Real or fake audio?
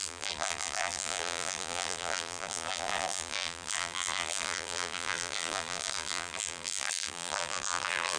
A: fake